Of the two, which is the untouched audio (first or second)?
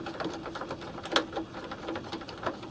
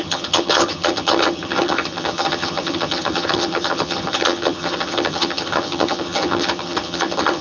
first